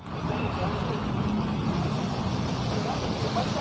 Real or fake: real